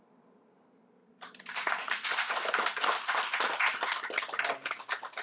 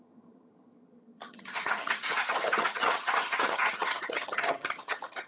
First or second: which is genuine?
first